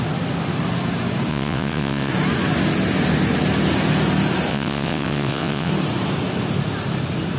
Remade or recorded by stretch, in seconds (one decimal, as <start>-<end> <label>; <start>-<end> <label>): 0.0-1.3 recorded; 1.3-2.1 remade; 2.1-4.5 recorded; 4.5-5.7 remade; 5.7-7.4 recorded